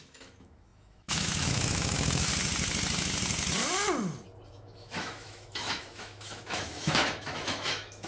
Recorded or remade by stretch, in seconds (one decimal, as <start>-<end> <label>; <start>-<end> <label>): 0.0-2.3 remade; 2.3-4.5 recorded; 4.5-8.1 remade